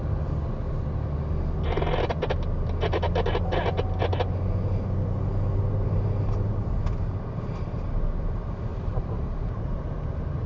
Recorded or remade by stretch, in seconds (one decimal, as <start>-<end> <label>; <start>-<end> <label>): 0.0-8.7 recorded; 8.7-9.8 remade; 9.8-10.5 recorded